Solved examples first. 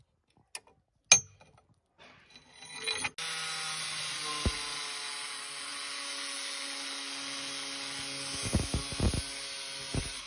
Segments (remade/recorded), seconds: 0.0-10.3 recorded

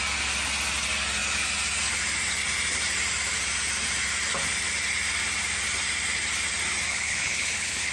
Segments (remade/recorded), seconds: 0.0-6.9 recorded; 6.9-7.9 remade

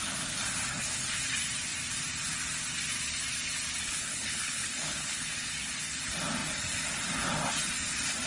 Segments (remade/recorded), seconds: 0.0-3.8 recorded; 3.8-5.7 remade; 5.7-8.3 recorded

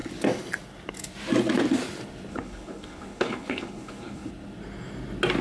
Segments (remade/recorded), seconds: 0.0-2.3 recorded; 2.3-4.3 remade; 4.3-5.4 recorded